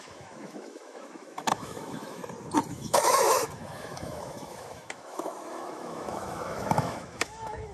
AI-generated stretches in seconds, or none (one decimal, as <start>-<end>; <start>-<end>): 0.0-2.2; 2.7-7.7